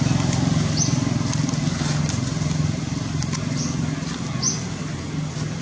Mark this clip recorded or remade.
recorded